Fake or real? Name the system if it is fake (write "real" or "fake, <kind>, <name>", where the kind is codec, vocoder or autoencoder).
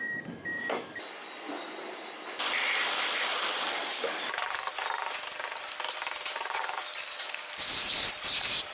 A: fake, vocoder, BigVGAN v2